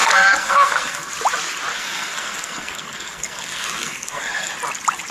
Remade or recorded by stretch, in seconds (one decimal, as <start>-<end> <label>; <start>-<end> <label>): 0.0-1.1 remade; 1.1-1.7 recorded; 1.7-4.5 remade; 4.5-5.1 recorded